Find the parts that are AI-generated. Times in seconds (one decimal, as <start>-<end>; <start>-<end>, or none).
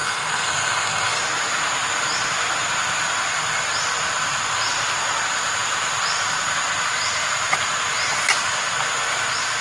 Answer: 0.0-1.2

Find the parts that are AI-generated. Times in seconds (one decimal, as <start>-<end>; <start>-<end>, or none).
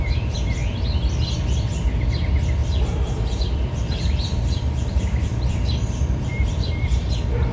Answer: 2.6-7.1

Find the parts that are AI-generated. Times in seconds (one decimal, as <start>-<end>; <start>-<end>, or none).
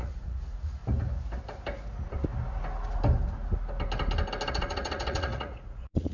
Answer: 0.0-0.8; 4.5-6.1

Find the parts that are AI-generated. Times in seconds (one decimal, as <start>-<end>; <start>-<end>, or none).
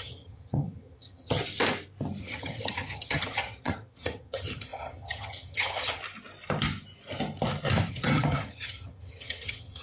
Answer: 0.0-1.4; 2.2-6.0; 7.9-9.8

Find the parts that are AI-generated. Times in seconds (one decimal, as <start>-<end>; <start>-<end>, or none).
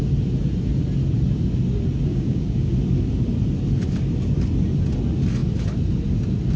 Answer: 2.1-2.7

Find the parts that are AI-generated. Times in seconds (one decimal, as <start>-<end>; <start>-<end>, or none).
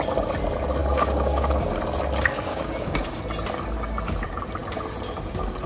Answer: 0.8-1.7; 2.5-3.2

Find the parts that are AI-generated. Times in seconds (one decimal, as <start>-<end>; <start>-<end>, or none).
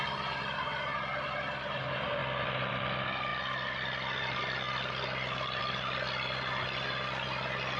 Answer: none